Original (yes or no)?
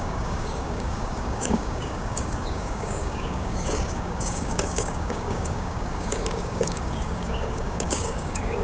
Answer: no